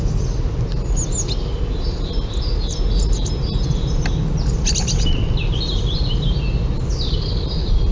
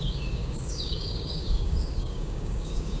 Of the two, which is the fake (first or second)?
second